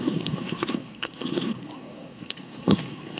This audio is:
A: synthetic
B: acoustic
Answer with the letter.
A